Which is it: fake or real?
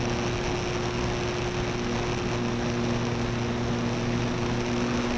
real